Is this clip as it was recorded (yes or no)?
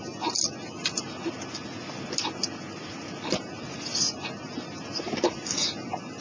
yes